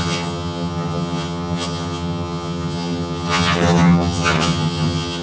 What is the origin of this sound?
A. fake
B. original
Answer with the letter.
A